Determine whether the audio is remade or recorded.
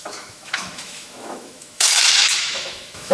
remade